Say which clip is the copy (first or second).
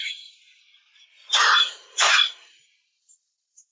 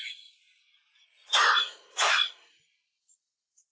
first